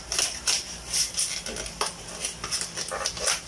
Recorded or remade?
recorded